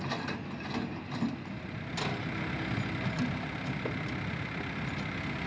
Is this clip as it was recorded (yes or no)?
yes